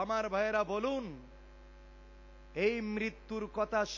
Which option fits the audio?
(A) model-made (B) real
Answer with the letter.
B